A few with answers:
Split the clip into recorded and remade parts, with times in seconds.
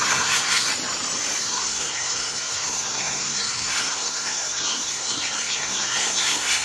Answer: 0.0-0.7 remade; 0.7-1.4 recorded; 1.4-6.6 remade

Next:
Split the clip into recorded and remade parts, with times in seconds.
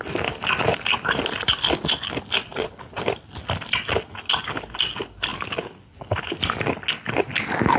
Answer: 0.0-7.8 recorded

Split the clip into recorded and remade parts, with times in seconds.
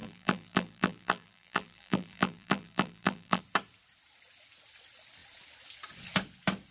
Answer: 0.0-3.4 remade; 3.4-6.7 recorded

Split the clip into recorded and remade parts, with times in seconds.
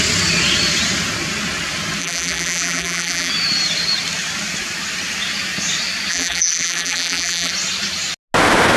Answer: 0.0-2.0 recorded; 2.0-3.3 remade; 3.3-6.1 recorded; 6.1-7.5 remade; 7.5-8.8 recorded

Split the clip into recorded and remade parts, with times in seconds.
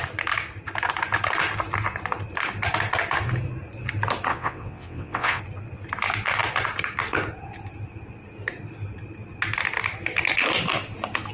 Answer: 0.0-4.3 recorded; 4.3-5.4 remade; 5.4-11.3 recorded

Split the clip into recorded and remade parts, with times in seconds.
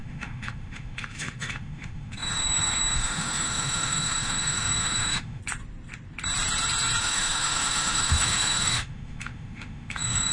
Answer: 0.0-5.4 remade; 5.4-7.0 recorded; 7.0-10.3 remade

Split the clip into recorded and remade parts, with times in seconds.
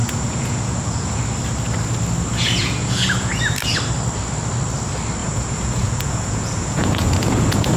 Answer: 0.0-1.2 remade; 1.2-2.3 recorded; 2.3-3.4 remade; 3.4-5.2 recorded; 5.2-7.8 remade